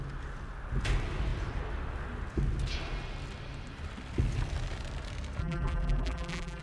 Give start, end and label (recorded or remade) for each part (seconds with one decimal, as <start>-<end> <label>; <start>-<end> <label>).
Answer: 0.0-5.4 recorded; 5.4-6.6 remade